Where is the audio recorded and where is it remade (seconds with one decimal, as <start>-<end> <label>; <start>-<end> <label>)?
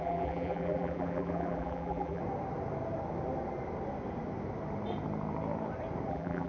0.0-2.2 remade; 2.2-6.1 recorded; 6.1-6.5 remade